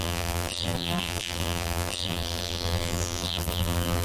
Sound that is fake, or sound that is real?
fake